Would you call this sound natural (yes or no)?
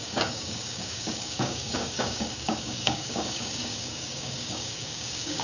no